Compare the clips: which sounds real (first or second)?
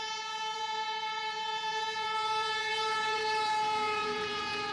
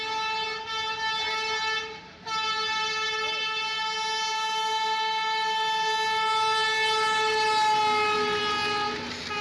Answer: second